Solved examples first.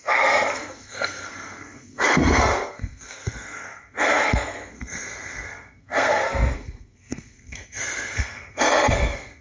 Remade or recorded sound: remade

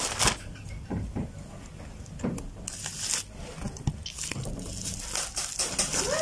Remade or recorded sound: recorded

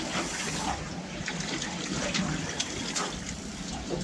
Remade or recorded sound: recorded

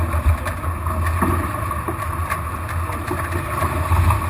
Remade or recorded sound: recorded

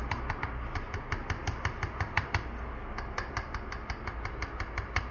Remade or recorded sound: recorded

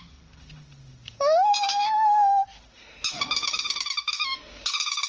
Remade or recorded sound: remade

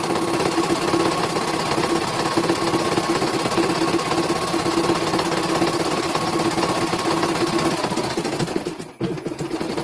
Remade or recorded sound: recorded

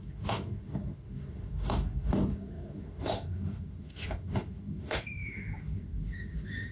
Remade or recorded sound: remade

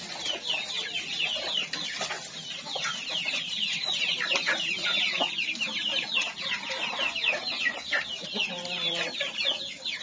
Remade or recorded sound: recorded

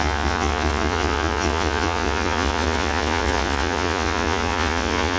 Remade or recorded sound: remade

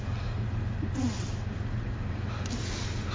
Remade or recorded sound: recorded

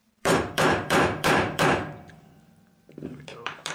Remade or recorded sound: remade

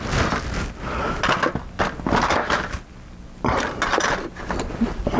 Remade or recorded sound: recorded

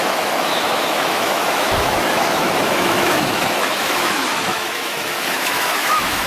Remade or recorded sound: remade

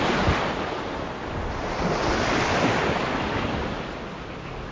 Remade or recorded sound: recorded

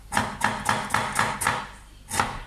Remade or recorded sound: recorded